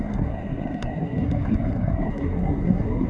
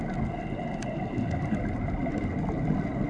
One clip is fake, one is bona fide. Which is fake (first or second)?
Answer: first